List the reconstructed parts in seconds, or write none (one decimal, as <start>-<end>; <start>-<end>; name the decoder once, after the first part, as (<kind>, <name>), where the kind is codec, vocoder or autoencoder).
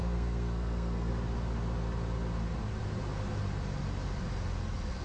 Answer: 0.0-1.1 (codec, SNAC)